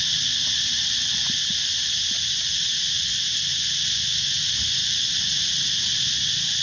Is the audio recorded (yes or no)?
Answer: yes